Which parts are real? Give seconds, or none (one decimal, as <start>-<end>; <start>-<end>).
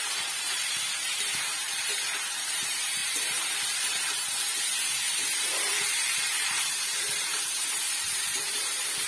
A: none